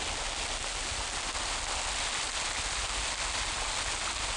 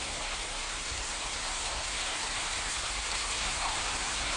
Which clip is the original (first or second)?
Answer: first